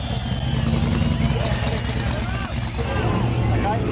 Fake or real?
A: real